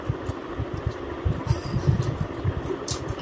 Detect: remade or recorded recorded